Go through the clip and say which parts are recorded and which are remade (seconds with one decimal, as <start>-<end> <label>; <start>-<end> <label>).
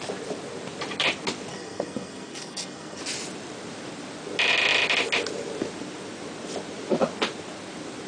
0.0-1.5 recorded; 1.5-3.0 remade; 3.0-8.1 recorded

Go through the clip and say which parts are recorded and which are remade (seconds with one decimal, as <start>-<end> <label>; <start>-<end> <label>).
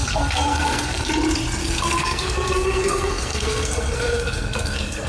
0.0-1.1 remade; 1.1-1.6 recorded; 1.6-5.1 remade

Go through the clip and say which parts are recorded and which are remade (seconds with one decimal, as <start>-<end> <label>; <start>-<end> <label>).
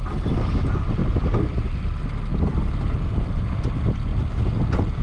0.0-5.0 recorded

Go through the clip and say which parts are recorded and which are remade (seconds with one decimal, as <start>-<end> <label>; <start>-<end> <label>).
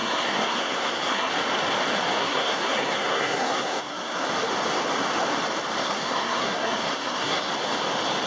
0.0-1.3 remade; 1.3-2.2 recorded; 2.2-4.3 remade; 4.3-5.8 recorded; 5.8-7.5 remade; 7.5-8.3 recorded